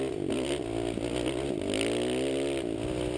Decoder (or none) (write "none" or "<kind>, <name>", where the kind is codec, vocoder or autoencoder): none